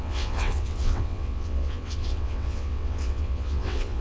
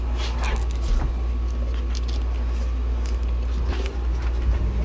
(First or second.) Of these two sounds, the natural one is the second